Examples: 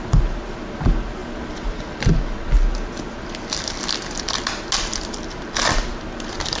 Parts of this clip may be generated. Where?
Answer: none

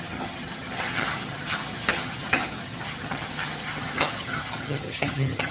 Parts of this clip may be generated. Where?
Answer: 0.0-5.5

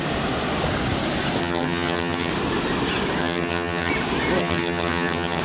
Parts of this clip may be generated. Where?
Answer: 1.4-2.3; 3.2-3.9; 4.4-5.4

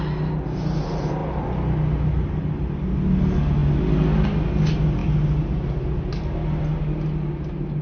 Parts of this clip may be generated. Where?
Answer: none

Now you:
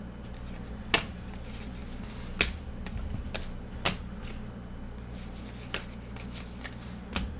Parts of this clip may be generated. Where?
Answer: none

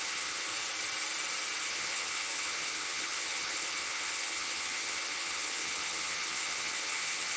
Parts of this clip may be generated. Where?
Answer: 0.0-0.5; 1.6-7.4